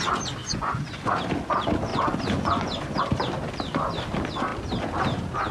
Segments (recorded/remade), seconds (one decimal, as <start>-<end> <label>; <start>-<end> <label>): 0.0-0.4 recorded; 0.4-1.1 remade; 1.1-1.9 recorded; 1.9-3.0 remade; 3.0-5.5 recorded